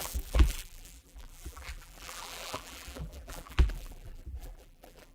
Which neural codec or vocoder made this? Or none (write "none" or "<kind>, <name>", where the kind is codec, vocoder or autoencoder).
vocoder, BigVGAN v2